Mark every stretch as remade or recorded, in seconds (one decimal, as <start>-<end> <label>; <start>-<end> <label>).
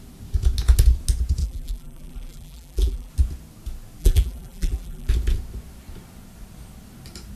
0.0-1.4 recorded; 1.4-3.1 remade; 3.1-4.0 recorded; 4.0-5.1 remade; 5.1-7.4 recorded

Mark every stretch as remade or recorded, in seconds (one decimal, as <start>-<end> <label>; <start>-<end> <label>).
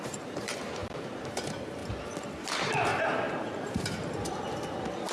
0.0-1.8 remade; 1.8-2.5 recorded; 2.5-2.9 remade; 2.9-5.1 recorded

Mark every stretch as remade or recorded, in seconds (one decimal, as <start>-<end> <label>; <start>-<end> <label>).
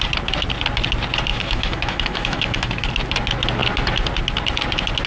0.0-1.3 recorded; 1.3-2.9 remade; 2.9-5.1 recorded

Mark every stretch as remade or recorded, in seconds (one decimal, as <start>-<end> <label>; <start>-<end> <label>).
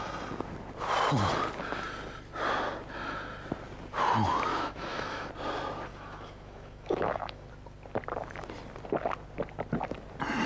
0.0-4.5 recorded; 4.5-5.3 remade; 5.3-5.9 recorded; 5.9-7.5 remade; 7.5-10.5 recorded